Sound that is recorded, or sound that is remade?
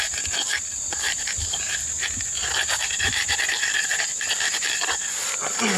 recorded